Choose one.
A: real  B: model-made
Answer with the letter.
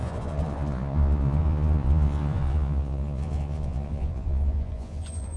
B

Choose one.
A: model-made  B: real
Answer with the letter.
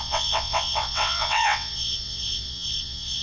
A